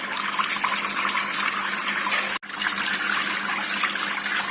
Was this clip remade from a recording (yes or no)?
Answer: no